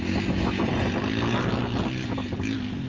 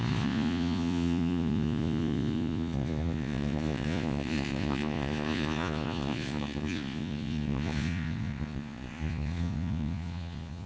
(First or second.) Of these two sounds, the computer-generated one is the second